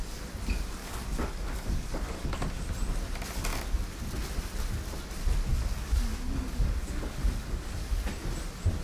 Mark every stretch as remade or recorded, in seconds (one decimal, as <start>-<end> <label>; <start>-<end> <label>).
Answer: 0.0-0.8 recorded; 0.8-2.6 remade; 2.6-5.5 recorded; 5.5-8.1 remade; 8.1-8.8 recorded

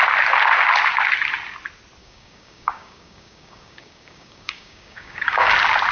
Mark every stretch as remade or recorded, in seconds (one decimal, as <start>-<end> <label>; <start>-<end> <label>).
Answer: 0.0-2.0 recorded; 2.0-5.5 remade; 5.5-5.9 recorded

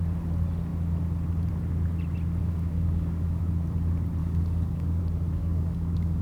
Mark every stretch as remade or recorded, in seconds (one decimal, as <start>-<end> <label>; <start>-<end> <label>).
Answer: 0.0-2.4 recorded; 2.4-3.4 remade; 3.4-4.2 recorded; 4.2-5.0 remade; 5.0-5.4 recorded; 5.4-6.2 remade

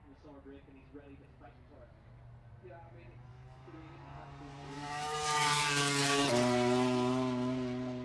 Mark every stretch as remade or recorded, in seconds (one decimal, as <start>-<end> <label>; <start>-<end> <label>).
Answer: 0.0-3.3 recorded; 3.3-6.3 remade; 6.3-8.0 recorded

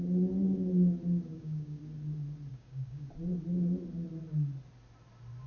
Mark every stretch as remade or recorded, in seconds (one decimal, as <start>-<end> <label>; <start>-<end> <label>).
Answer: 0.0-1.3 recorded; 1.3-1.8 remade; 1.8-2.5 recorded; 2.5-3.1 remade; 3.1-5.5 recorded

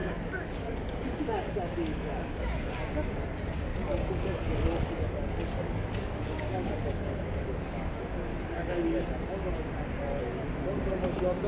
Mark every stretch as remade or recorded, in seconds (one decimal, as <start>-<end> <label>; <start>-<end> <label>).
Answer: 0.0-2.7 remade; 2.7-3.7 recorded; 3.7-7.9 remade; 7.9-8.3 recorded; 8.3-9.5 remade; 9.5-11.5 recorded